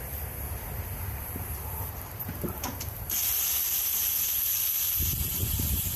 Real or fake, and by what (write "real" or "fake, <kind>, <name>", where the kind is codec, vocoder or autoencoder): fake, vocoder, BigVGAN v2